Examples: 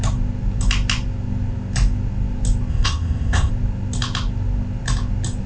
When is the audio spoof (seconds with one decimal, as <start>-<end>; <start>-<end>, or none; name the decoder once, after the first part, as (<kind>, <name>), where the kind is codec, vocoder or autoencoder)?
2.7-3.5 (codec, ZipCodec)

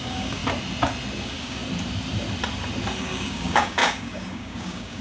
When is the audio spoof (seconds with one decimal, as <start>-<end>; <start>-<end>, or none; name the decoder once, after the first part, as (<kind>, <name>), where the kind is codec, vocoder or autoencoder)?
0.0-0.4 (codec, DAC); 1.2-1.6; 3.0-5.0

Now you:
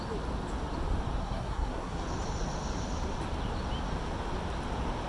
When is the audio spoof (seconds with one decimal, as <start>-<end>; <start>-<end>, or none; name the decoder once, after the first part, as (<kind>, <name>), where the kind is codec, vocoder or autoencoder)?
1.2-2.0 (codec, SNAC)